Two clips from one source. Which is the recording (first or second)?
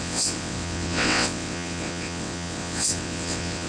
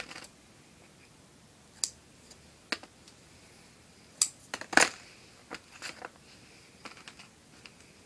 second